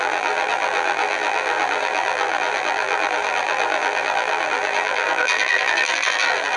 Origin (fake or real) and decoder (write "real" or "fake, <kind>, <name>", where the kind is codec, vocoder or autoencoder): fake, vocoder, BigVGAN v2